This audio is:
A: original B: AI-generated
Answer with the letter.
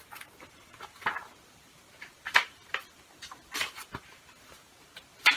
B